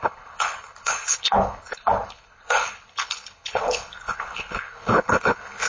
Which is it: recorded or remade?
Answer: remade